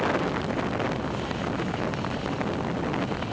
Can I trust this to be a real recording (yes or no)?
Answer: yes